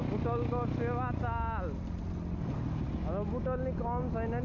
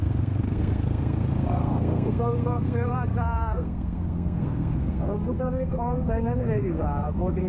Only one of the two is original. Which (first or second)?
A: first